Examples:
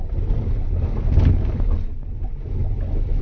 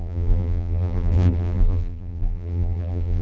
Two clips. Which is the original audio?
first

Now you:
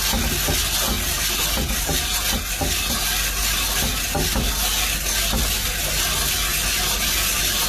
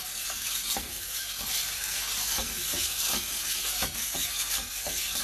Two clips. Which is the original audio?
first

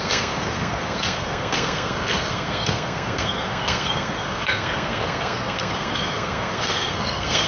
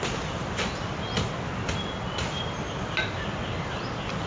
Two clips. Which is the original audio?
second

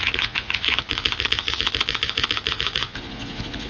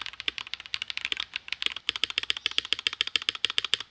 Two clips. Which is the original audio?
second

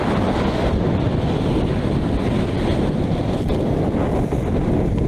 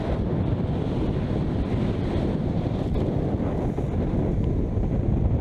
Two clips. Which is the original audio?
first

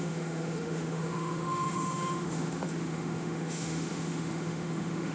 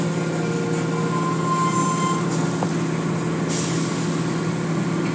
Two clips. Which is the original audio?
second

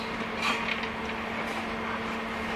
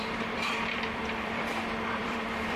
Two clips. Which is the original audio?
first